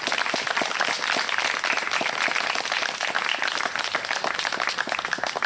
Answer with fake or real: real